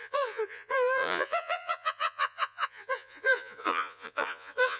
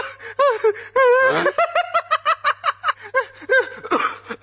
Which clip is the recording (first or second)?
second